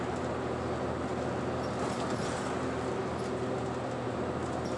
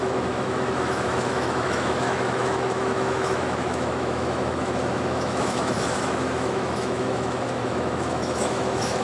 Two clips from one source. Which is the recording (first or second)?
first